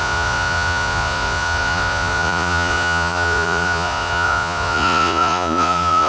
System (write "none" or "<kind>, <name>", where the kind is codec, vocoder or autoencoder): vocoder, Vocos